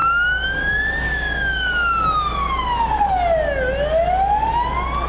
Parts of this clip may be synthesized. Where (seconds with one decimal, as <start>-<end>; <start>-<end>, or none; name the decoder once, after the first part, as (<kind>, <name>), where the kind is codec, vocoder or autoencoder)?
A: 0.0-3.1 (codec, DAC)